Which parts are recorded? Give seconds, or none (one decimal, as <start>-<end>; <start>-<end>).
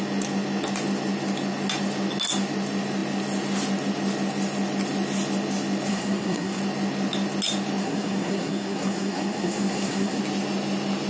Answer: 0.0-5.9; 6.6-7.8; 10.2-11.1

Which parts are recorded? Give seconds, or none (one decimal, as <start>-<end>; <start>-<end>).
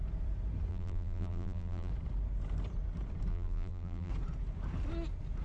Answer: 0.0-0.7; 1.9-3.3; 4.1-5.4